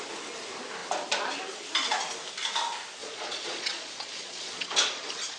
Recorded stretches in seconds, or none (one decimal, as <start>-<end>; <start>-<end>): 0.0-3.0; 4.7-5.4